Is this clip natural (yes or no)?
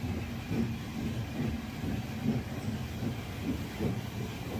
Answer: yes